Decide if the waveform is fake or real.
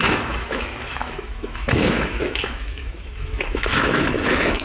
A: fake